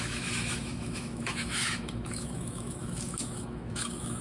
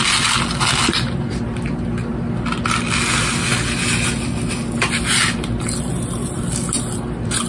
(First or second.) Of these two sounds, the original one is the second